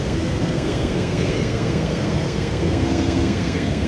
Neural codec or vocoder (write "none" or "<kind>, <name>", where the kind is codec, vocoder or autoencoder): codec, SNAC